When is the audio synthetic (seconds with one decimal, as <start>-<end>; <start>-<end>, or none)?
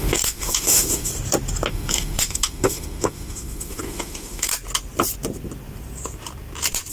0.0-1.1; 1.7-4.5